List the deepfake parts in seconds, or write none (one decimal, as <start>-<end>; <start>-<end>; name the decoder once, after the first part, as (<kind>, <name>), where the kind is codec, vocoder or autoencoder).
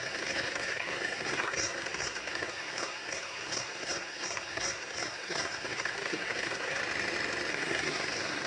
0.0-6.8 (codec, SNAC); 7.5-8.5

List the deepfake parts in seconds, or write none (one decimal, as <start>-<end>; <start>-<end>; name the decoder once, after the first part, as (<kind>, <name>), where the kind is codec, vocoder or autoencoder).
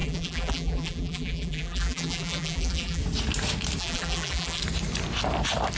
0.0-3.0 (vocoder, BigVGAN v2); 3.8-4.6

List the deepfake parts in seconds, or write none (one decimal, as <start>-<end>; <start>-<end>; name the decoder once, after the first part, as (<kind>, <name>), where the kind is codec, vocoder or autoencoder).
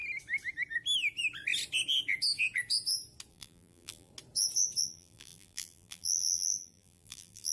3.3-4.1 (vocoder, BigVGAN v2); 4.8-7.5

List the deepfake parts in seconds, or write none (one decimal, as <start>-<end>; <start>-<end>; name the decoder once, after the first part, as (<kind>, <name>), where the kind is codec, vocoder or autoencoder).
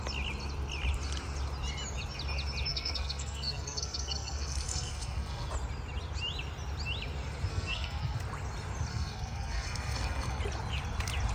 2.7-5.5 (codec, SNAC); 7.5-8.2; 8.9-10.4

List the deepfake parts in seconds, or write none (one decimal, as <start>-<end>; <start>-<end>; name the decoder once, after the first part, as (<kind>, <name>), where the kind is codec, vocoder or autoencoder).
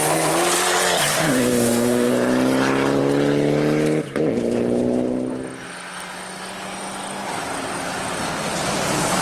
1.1-2.1 (autoencoder, DAC-VAE)